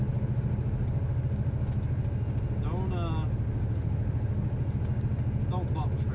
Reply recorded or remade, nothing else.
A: recorded